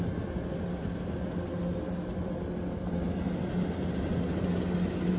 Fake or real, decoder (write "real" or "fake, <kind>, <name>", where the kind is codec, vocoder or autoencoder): real